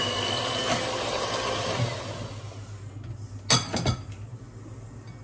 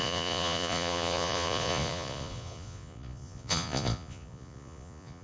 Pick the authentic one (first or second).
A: first